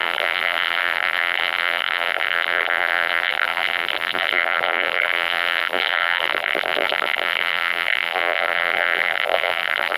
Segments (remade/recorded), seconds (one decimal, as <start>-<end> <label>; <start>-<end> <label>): 0.0-10.0 remade